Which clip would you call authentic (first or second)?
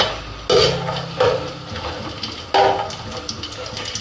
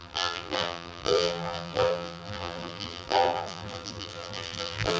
first